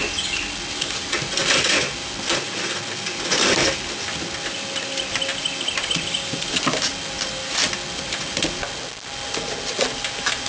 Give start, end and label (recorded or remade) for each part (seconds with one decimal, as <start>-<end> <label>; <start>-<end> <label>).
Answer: 0.0-10.5 recorded